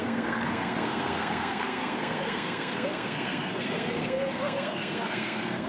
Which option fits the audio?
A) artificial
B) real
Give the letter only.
A